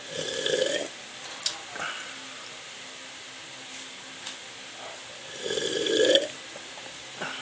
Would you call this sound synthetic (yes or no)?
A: no